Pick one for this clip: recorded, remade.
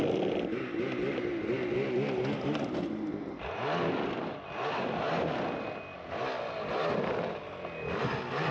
recorded